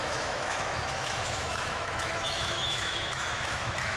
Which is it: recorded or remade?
remade